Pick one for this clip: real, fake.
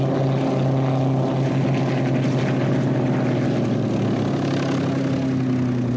real